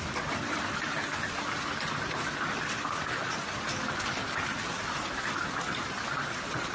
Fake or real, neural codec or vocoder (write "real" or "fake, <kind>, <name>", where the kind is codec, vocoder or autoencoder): real